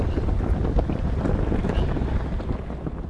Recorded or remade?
recorded